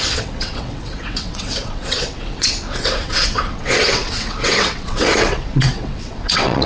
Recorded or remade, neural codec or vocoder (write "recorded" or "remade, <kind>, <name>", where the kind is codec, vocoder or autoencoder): remade, vocoder, WaveNeXt